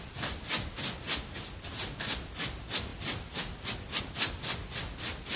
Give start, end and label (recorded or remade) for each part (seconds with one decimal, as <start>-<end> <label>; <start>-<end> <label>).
0.0-2.9 recorded; 2.9-4.0 remade; 4.0-5.4 recorded